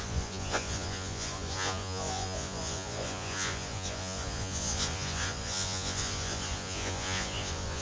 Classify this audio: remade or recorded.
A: remade